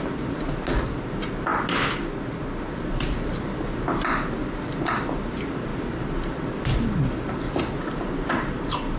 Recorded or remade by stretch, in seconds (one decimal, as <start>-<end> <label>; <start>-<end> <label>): 0.0-9.0 recorded